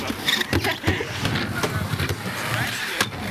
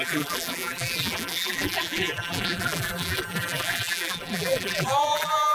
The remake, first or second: second